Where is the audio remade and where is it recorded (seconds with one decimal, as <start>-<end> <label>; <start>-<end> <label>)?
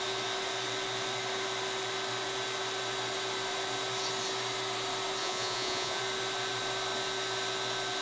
0.0-5.2 recorded; 5.2-6.0 remade; 6.0-8.0 recorded